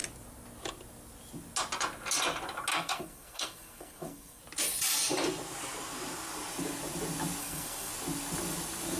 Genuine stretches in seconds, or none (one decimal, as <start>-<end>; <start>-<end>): 0.0-2.7; 4.4-7.4; 7.9-9.0